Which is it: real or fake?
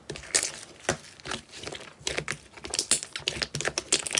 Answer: real